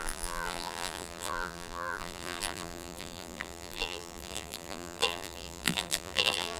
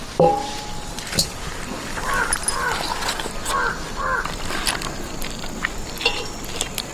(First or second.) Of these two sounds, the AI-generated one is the first